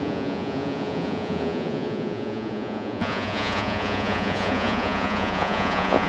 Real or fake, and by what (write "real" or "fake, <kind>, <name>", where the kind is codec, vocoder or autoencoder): fake, vocoder, Vocos